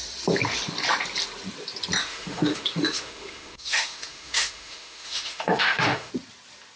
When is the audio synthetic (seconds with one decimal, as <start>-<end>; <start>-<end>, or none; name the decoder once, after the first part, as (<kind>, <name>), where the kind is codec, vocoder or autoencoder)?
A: 2.0-6.1 (autoencoder, DAC-VAE)